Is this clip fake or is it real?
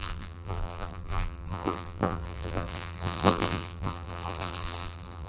fake